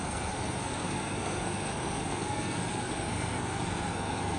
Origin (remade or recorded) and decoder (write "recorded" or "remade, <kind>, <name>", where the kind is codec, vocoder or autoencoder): remade, codec, SNAC